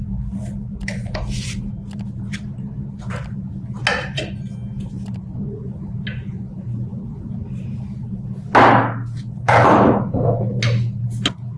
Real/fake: real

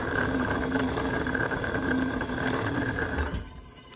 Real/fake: fake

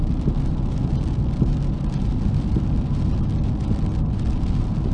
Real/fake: real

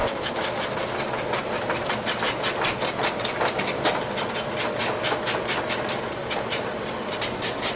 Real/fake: real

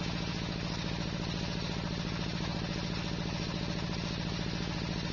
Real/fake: real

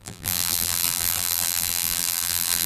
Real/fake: fake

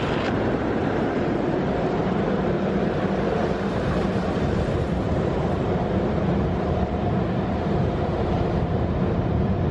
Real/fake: fake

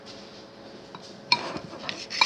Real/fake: fake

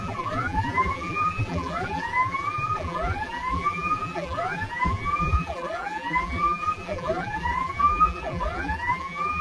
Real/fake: fake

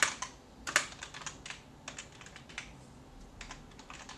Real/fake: real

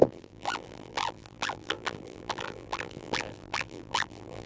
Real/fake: fake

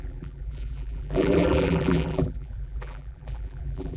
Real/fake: fake